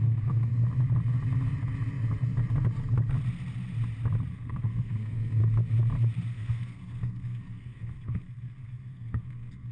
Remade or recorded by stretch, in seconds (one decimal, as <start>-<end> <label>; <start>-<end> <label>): 0.0-0.5 remade; 0.5-4.3 recorded; 4.3-5.4 remade; 5.4-6.3 recorded; 6.3-9.7 remade